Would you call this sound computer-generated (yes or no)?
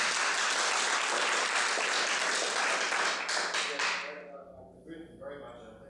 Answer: no